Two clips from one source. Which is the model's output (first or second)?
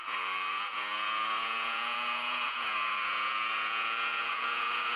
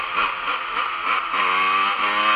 first